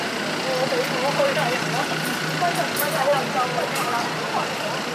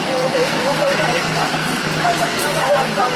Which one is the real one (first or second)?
first